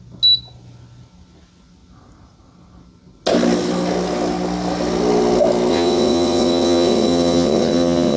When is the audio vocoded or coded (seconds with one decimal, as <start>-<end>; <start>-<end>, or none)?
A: 5.7-8.2